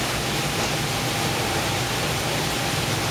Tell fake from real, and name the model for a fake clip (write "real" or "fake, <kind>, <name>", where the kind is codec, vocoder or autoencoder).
real